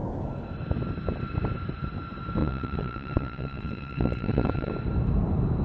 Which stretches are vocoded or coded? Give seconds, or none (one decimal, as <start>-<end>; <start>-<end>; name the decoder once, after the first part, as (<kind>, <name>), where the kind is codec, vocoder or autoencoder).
2.4-4.7 (vocoder, WaveNeXt)